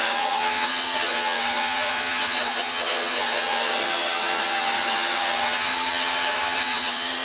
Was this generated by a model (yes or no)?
yes